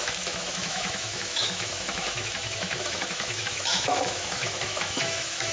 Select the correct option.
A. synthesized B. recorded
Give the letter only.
A